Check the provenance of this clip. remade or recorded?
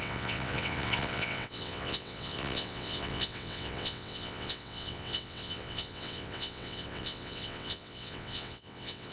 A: remade